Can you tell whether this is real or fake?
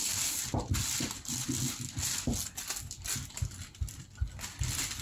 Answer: real